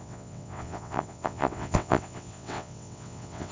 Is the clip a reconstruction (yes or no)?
yes